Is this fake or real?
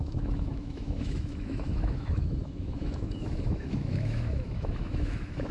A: fake